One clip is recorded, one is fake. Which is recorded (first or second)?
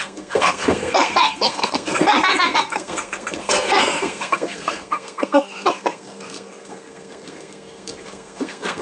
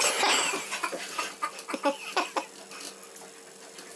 second